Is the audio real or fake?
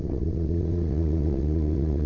fake